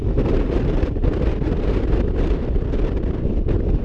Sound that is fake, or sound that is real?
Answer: fake